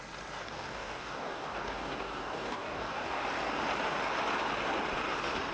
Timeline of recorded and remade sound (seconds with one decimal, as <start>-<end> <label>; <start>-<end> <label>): 0.0-0.4 recorded; 0.4-3.2 remade; 3.2-5.5 recorded